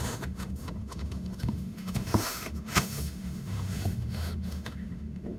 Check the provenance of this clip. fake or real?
fake